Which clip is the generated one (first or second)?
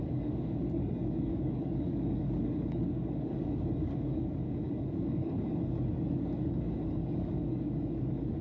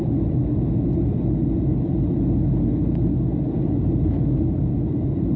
first